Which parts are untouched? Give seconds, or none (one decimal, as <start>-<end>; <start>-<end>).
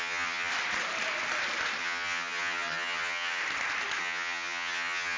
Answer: 0.5-1.8; 3.4-4.0